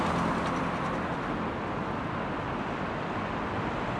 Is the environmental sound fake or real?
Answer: real